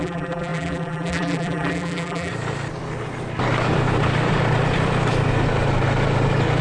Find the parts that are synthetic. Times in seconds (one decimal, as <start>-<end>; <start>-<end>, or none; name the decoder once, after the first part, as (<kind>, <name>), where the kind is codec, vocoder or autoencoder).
0.0-2.3 (vocoder, BigVGAN v2)